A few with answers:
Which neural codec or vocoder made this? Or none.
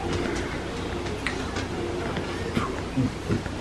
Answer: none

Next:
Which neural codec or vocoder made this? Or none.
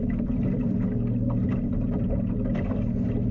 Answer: none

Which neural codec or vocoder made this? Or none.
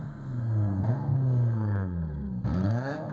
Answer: codec, SNAC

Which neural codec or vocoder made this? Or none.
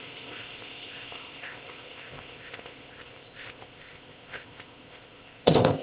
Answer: codec, ZipCodec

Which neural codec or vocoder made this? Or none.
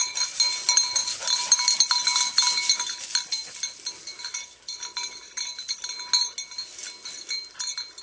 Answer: none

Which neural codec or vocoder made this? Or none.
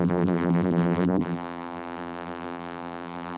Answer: vocoder, BigVGAN v2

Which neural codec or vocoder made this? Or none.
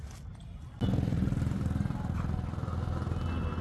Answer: none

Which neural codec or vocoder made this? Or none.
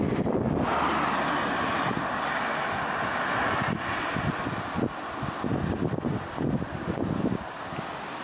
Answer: none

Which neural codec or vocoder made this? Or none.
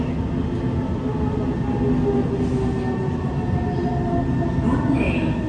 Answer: none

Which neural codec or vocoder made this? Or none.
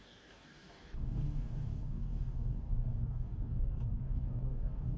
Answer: codec, DAC